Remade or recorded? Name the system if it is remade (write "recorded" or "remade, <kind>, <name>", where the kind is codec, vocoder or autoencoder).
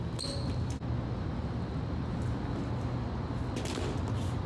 recorded